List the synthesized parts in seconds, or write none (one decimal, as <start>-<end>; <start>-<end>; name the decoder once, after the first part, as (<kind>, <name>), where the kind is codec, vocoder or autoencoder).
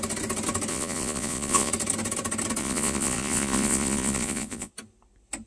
0.7-1.7 (vocoder, Vocos); 2.6-4.7